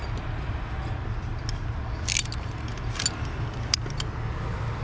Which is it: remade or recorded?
recorded